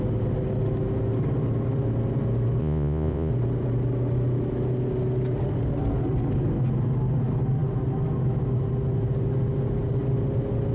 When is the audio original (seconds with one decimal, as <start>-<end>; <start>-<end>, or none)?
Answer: 0.0-2.6; 3.3-10.7